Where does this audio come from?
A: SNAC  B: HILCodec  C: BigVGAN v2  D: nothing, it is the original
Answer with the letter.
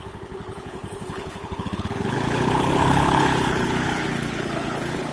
B